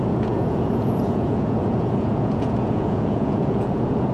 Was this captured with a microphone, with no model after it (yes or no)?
no